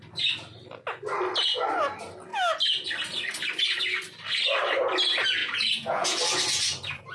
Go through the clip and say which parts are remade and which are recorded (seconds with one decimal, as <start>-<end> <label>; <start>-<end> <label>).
0.0-5.4 recorded; 5.4-6.2 remade; 6.2-7.1 recorded